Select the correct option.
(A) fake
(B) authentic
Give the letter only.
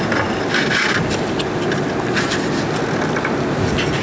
B